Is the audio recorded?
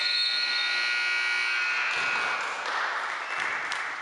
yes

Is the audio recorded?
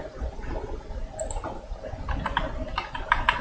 yes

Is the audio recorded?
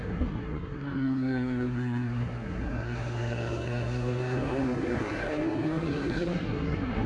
no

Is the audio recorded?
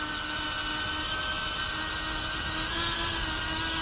yes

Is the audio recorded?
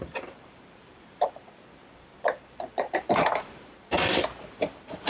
no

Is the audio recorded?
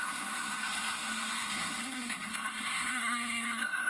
no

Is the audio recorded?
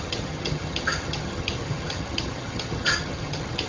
no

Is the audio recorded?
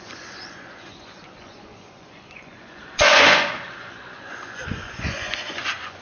no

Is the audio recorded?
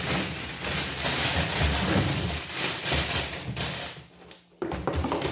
yes